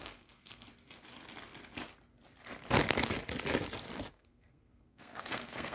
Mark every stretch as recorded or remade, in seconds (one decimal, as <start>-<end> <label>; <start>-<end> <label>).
0.0-0.7 remade; 0.7-4.1 recorded; 4.1-5.7 remade